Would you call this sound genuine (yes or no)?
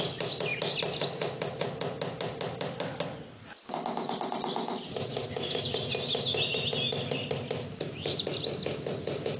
yes